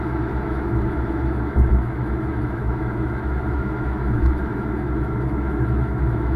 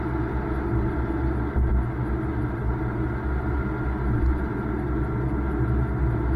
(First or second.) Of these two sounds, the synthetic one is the first